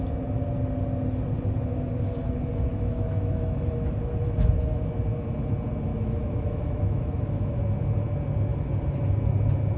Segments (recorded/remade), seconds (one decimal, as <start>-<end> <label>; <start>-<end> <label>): 0.0-2.7 recorded; 2.7-4.9 remade; 4.9-5.9 recorded; 5.9-7.6 remade; 7.6-9.8 recorded